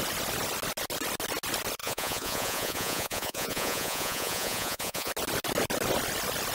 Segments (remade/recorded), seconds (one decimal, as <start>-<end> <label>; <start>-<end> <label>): 0.0-1.8 recorded; 1.8-5.1 remade; 5.1-6.5 recorded